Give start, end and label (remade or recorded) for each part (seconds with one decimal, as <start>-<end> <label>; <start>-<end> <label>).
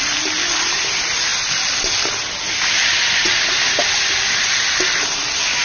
0.0-5.6 recorded